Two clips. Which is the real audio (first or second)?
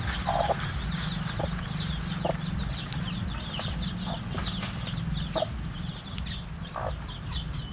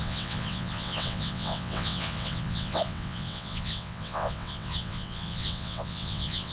first